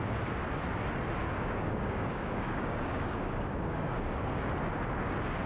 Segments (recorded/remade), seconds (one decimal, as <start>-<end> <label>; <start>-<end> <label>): 0.0-1.2 recorded; 1.2-4.5 remade; 4.5-5.5 recorded